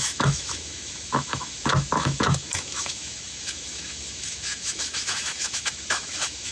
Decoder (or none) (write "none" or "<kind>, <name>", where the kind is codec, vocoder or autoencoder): autoencoder, DAC-VAE